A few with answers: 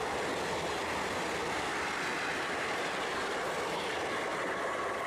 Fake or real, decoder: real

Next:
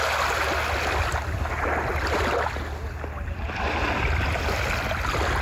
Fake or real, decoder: real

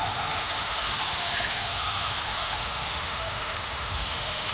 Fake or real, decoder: fake, autoencoder, DAC-VAE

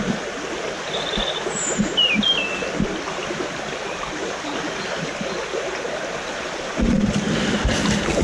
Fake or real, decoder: real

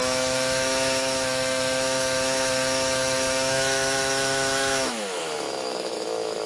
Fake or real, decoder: fake, autoencoder, DAC-VAE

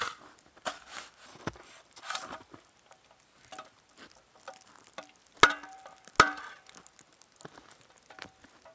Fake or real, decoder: real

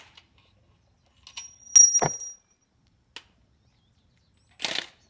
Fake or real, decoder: real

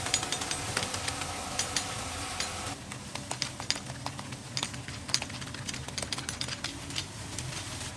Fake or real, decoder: real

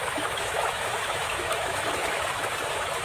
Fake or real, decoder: fake, autoencoder, DAC-VAE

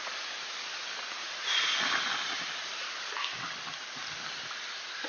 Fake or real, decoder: real